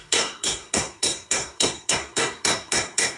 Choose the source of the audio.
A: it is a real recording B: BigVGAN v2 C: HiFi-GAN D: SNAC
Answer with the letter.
D